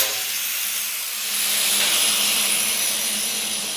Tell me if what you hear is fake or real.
real